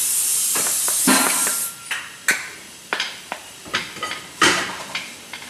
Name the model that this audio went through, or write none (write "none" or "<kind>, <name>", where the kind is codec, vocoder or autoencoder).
vocoder, BigVGAN v2